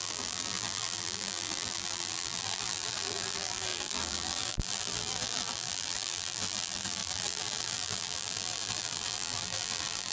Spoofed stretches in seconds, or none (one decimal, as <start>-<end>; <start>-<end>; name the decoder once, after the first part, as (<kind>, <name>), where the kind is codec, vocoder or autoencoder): 0.0-10.1 (vocoder, BigVGAN v2)